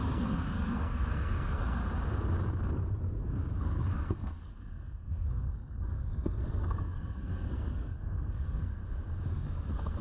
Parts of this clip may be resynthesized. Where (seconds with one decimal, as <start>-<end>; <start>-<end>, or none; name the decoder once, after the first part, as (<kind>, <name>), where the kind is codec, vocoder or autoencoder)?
0.0-1.8 (codec, SNAC); 3.0-8.8; 9.3-10.0